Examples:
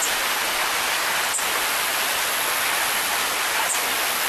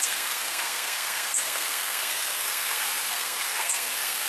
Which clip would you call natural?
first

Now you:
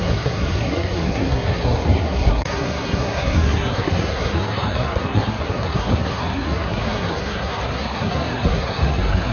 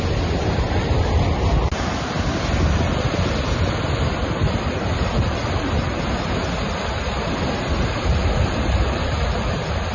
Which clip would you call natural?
second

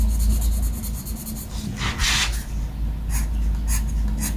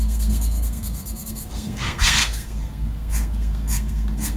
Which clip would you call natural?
first